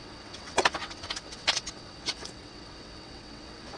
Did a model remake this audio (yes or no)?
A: yes